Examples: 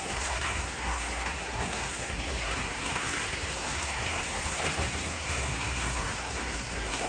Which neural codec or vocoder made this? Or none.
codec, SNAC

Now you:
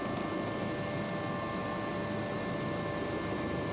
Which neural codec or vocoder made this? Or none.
none